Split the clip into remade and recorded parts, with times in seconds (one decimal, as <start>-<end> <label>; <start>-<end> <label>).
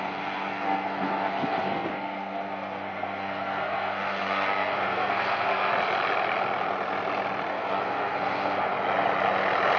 0.0-5.7 remade; 5.7-7.5 recorded; 7.5-8.7 remade; 8.7-9.8 recorded